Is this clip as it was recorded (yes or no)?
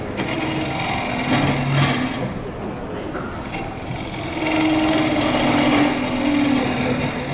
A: yes